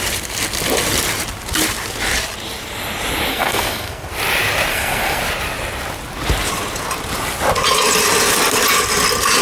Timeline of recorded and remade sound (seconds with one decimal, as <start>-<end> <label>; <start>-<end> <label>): 0.0-3.3 recorded; 3.3-4.1 remade; 4.1-4.7 recorded; 4.7-5.2 remade; 5.2-9.4 recorded